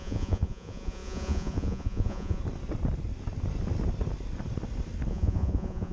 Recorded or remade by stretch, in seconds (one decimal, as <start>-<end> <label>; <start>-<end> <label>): 0.0-2.4 remade; 2.4-5.1 recorded; 5.1-5.9 remade